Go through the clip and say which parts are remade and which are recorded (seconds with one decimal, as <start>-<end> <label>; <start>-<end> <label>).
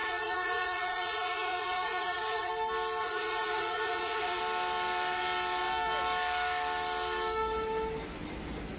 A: 0.0-2.5 remade; 2.5-3.0 recorded; 3.0-4.4 remade; 4.4-8.8 recorded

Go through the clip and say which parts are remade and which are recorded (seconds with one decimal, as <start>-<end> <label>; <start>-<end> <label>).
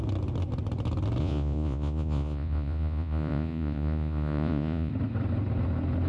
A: 0.0-1.2 recorded; 1.2-4.9 remade; 4.9-6.1 recorded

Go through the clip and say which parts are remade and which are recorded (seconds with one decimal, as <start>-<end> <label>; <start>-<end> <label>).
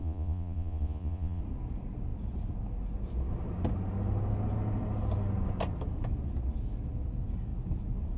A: 0.0-1.4 remade; 1.4-8.2 recorded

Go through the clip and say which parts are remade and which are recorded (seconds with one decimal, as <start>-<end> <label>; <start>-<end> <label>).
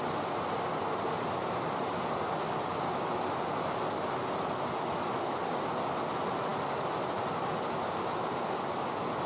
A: 0.0-9.3 recorded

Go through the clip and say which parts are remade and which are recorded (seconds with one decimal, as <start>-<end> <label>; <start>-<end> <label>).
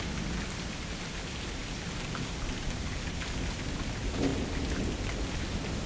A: 0.0-5.9 recorded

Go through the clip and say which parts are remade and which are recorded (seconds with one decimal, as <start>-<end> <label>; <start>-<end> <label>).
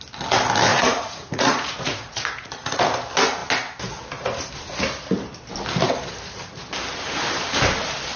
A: 0.0-0.7 recorded; 0.7-2.8 remade; 2.8-8.2 recorded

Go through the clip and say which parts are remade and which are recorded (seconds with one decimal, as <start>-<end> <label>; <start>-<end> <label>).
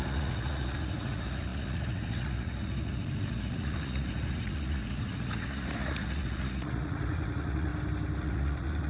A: 0.0-7.7 remade; 7.7-8.2 recorded; 8.2-8.9 remade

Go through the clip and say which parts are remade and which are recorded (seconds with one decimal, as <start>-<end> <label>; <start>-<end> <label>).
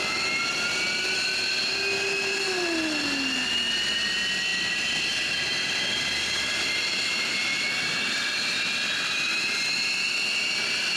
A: 0.0-11.0 recorded